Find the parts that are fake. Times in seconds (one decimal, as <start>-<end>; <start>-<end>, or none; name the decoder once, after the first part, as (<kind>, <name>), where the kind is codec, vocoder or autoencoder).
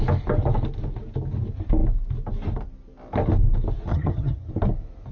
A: 3.9-4.5 (vocoder, HiFi-GAN)